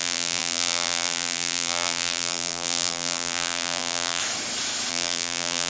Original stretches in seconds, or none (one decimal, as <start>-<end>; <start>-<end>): 4.2-4.9